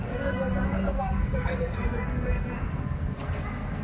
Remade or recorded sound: remade